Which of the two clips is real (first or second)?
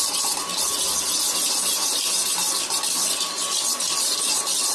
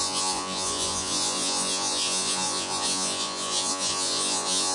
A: first